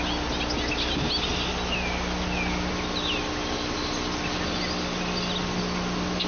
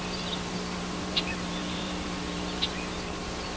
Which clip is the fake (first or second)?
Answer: second